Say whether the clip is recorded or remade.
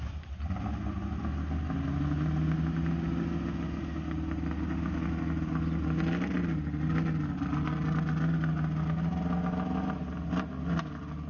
recorded